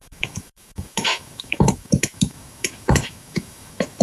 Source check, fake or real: fake